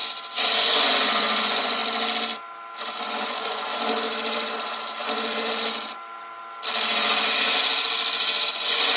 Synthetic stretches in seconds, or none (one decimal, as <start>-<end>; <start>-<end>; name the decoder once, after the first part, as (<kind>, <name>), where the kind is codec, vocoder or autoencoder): 0.6-1.8 (vocoder, Vocos); 3.0-3.7; 8.5-9.0